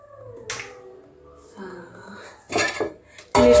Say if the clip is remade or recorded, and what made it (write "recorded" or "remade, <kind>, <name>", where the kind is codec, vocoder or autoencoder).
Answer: recorded